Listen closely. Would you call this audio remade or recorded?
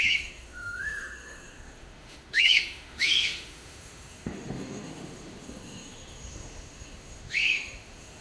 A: remade